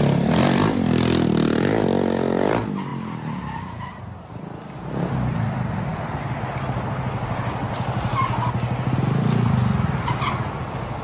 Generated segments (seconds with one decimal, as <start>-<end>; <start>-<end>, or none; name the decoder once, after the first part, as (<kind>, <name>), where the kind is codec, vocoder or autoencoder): none